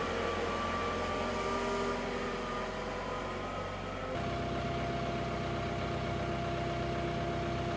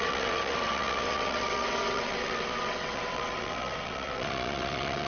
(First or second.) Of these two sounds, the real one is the first